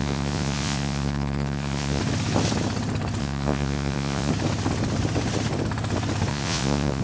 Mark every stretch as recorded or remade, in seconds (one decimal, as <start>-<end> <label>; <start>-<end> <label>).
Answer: 0.0-2.0 remade; 2.0-3.2 recorded; 3.2-4.3 remade; 4.3-6.3 recorded; 6.3-7.0 remade